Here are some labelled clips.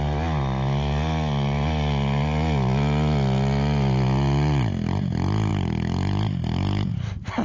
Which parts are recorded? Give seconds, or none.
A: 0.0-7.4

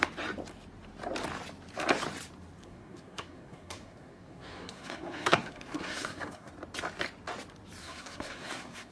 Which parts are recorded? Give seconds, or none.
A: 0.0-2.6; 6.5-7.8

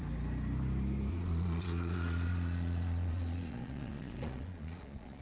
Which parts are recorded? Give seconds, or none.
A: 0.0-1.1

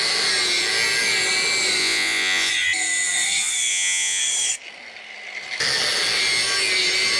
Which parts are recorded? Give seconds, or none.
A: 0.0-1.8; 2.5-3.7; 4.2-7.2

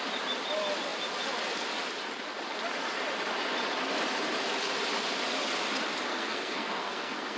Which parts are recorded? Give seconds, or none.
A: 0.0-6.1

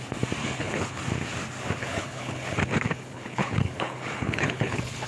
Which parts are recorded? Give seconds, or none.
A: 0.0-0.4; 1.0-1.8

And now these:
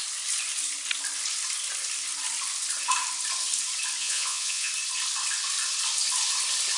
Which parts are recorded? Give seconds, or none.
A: 0.0-4.0; 4.7-6.8